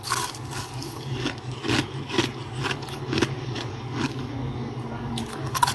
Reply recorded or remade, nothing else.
remade